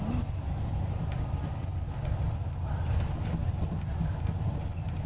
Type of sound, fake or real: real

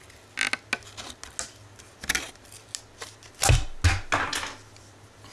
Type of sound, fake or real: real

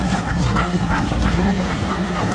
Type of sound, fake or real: fake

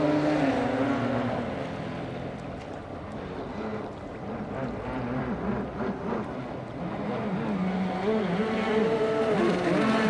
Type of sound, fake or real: real